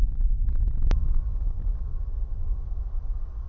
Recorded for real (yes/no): yes